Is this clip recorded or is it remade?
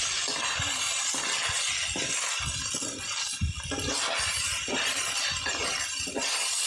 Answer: recorded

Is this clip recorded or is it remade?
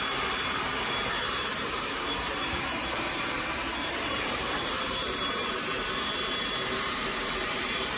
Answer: remade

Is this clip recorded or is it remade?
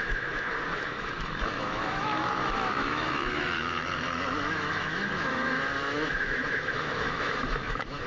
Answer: remade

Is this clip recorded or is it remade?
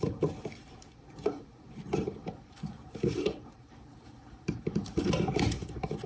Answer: remade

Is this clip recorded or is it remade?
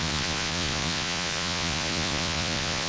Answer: remade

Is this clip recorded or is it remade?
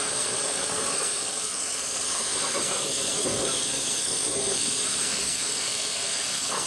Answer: remade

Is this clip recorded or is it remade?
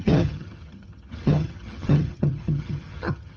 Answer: remade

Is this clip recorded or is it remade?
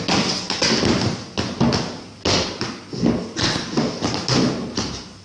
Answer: recorded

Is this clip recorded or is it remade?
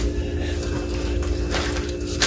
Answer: recorded